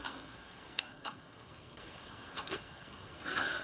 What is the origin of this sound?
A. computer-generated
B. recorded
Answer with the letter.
A